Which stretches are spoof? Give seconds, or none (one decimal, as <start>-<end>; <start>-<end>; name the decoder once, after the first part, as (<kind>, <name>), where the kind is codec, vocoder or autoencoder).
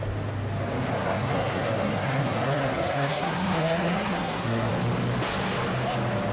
0.9-4.7 (codec, SNAC)